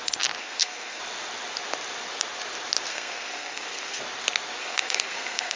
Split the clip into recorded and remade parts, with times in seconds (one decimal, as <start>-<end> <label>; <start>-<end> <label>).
0.0-0.4 recorded; 0.4-1.0 remade; 1.0-2.9 recorded; 2.9-4.0 remade; 4.0-4.6 recorded; 4.6-5.6 remade